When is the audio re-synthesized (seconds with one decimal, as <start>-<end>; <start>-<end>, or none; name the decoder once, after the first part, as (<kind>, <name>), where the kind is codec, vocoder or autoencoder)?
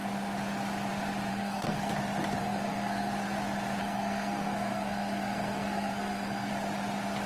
1.3-1.9 (codec, SNAC); 2.4-3.1; 3.8-6.5